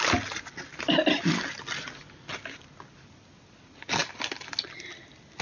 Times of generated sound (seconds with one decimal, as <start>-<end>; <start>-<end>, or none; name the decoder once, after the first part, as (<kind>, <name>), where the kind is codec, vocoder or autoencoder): none